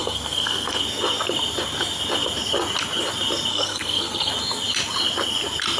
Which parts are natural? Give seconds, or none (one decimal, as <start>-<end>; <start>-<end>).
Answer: 0.8-3.5; 4.3-5.8